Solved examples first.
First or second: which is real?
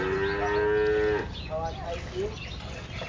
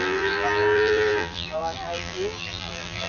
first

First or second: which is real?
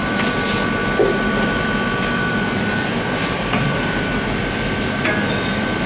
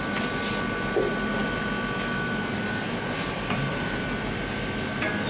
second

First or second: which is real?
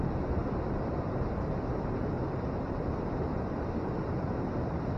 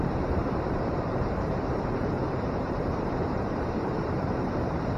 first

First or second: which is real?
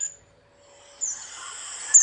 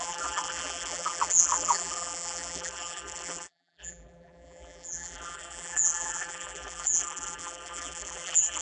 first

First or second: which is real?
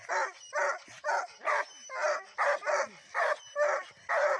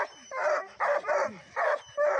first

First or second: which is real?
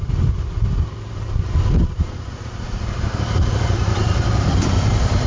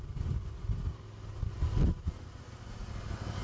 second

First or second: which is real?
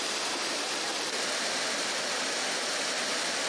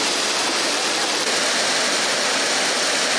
second